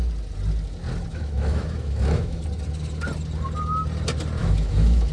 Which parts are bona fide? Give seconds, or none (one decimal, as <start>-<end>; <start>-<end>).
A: 0.0-1.1; 2.4-4.4